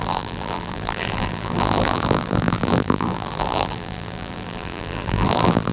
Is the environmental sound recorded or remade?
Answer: remade